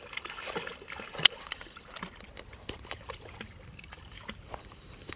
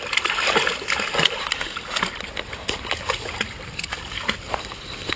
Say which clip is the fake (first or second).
first